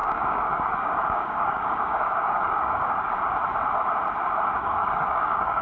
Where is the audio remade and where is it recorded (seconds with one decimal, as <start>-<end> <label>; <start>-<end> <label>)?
0.0-3.2 remade; 3.2-4.6 recorded; 4.6-5.6 remade